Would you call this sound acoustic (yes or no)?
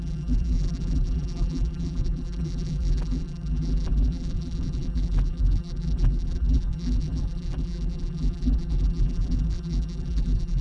no